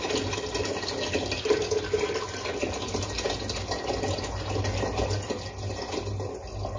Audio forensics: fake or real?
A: real